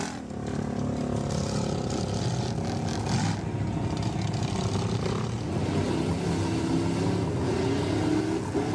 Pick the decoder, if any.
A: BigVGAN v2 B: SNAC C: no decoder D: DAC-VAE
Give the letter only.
C